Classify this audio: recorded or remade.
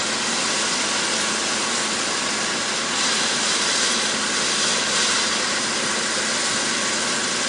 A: recorded